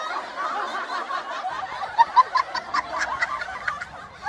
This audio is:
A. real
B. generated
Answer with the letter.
A